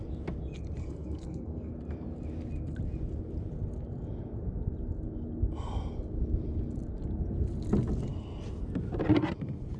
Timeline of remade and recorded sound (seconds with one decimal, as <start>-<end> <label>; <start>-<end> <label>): 0.0-0.8 recorded; 0.8-1.7 remade; 1.7-9.8 recorded